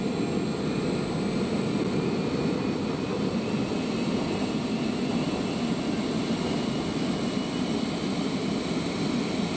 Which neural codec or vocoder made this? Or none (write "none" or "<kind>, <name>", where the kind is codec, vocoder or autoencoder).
none